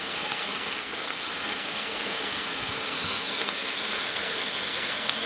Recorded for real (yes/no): no